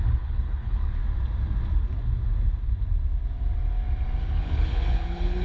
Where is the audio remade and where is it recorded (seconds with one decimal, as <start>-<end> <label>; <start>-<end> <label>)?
0.0-1.0 remade; 1.0-4.2 recorded; 4.2-5.4 remade

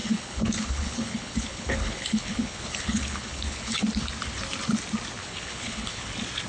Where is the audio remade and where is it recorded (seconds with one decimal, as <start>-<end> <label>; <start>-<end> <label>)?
0.0-3.8 remade; 3.8-5.2 recorded; 5.2-6.1 remade; 6.1-6.5 recorded